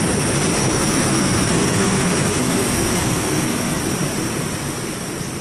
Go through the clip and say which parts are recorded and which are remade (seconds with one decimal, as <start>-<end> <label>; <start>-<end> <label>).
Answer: 0.0-0.6 recorded; 0.6-3.8 remade; 3.8-5.4 recorded